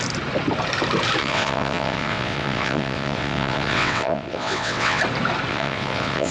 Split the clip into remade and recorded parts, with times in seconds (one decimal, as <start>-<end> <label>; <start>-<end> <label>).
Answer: 0.0-1.2 recorded; 1.2-5.0 remade; 5.0-5.5 recorded; 5.5-6.3 remade